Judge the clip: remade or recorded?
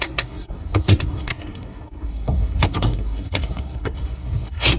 remade